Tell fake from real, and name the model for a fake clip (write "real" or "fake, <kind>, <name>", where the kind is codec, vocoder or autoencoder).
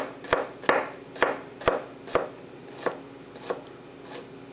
real